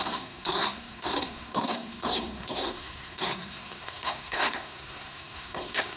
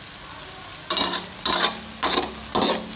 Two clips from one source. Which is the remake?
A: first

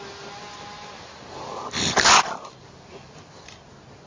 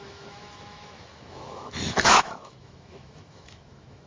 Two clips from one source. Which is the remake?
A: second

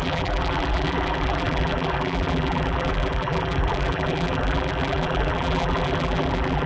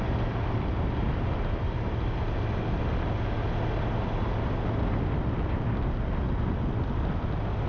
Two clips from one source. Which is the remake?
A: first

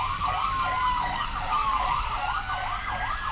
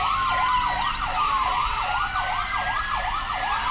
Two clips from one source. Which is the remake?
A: first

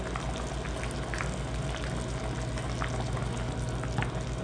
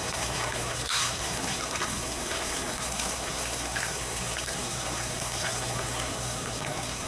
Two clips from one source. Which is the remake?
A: second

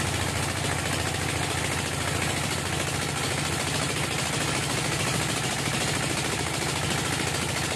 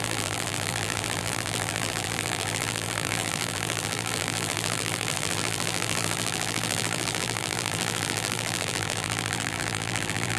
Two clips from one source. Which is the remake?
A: second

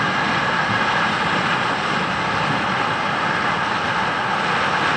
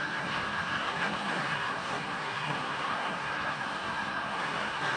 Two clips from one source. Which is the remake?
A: second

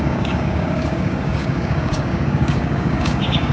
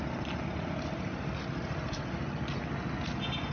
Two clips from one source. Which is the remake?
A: first